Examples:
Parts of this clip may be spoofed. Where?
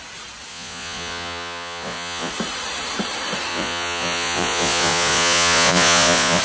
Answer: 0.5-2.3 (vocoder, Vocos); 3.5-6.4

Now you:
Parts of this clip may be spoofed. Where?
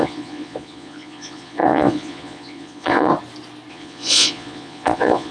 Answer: 0.0-3.1 (vocoder, Vocos); 3.7-5.3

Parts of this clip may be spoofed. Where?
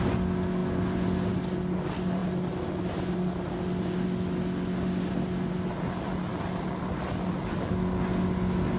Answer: none